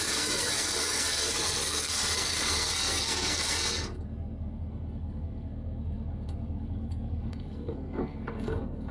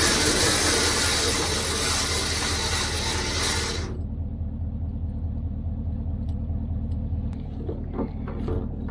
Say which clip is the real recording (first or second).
second